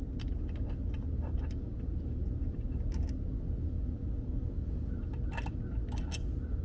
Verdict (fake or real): real